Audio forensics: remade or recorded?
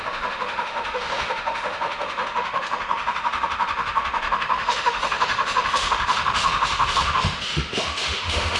remade